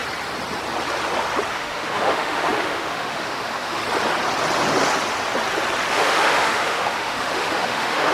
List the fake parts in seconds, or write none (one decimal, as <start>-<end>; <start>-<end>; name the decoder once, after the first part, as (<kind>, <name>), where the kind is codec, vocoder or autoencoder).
1.5-3.8 (autoencoder, DAC-VAE); 5.9-8.1